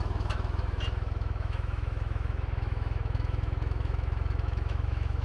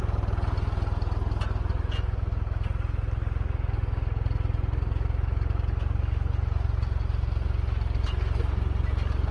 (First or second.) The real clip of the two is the second